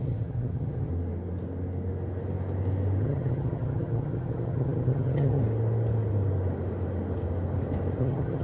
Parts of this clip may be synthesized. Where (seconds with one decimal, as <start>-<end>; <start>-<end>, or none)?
0.0-0.9; 3.0-5.4; 8.0-8.4